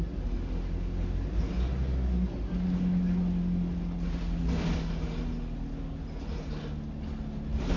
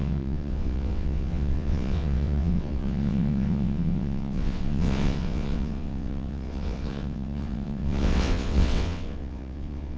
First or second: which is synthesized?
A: second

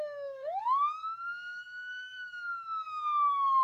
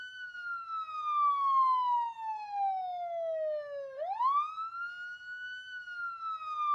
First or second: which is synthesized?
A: first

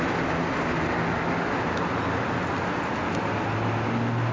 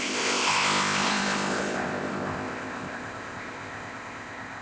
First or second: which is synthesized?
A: second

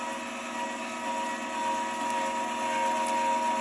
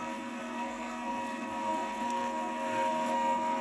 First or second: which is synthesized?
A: second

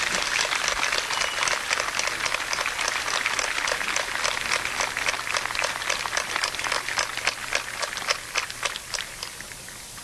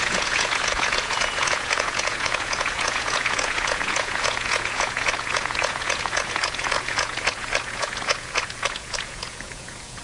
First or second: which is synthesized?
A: second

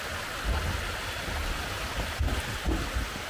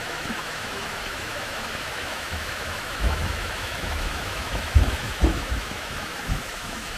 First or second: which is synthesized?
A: second